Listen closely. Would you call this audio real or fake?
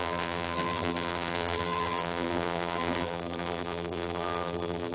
fake